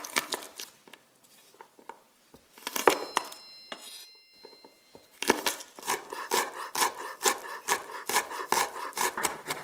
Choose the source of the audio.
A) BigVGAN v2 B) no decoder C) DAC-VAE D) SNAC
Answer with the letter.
B